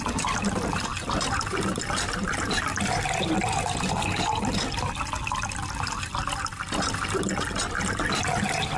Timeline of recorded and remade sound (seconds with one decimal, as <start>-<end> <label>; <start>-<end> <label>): 0.0-8.8 recorded